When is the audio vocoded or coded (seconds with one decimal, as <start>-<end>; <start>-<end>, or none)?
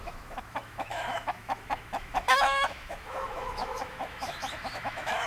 0.0-5.3